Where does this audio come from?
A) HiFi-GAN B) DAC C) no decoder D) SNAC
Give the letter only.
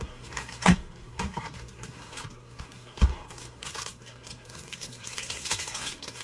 D